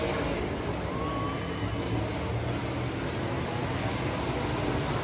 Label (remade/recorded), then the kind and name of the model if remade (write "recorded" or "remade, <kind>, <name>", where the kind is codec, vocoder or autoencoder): recorded